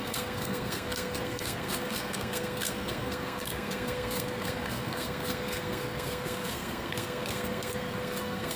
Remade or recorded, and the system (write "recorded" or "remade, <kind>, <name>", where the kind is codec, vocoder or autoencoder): remade, codec, SNAC